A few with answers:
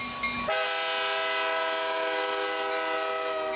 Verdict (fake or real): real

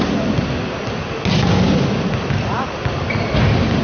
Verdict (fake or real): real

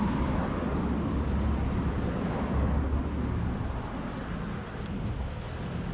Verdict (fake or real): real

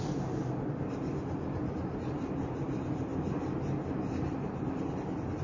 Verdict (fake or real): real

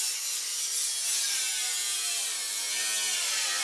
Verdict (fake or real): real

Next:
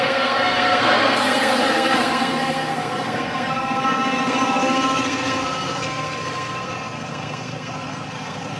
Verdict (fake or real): fake